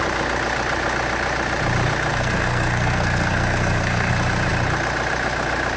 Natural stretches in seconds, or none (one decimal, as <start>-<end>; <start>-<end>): 0.0-2.1; 4.1-5.8